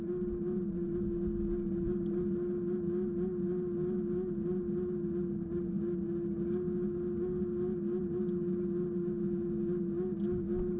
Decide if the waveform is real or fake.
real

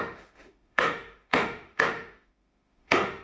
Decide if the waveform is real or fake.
fake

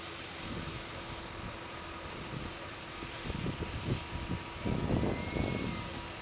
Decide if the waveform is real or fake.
real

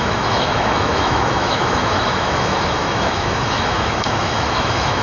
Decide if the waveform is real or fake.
fake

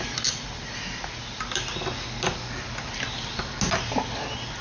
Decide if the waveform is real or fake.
real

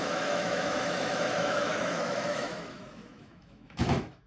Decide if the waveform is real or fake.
fake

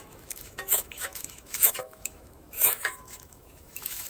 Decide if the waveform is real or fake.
fake